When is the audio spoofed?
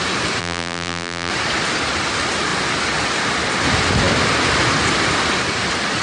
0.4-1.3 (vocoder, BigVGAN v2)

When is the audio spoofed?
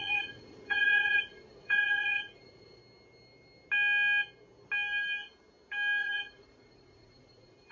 0.0-2.8 (vocoder, Vocos); 6.0-7.7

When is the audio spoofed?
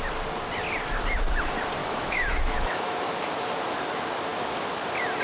1.8-3.1 (autoencoder, DAC-VAE)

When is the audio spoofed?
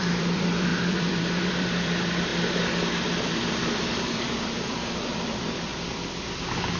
0.0-2.3 (vocoder, BigVGAN v2); 3.0-6.8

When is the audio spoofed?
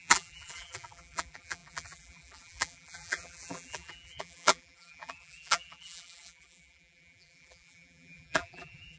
0.0-9.0 (vocoder, BigVGAN v2)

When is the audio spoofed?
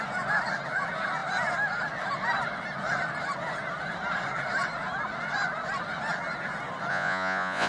6.9-7.7 (vocoder, Vocos)